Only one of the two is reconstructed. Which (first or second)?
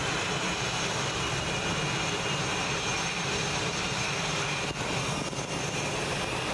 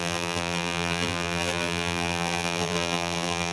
second